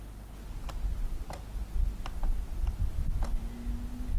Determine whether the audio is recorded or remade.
recorded